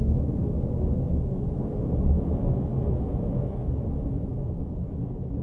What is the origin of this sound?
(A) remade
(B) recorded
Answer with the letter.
A